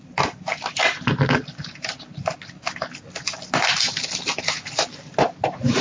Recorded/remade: recorded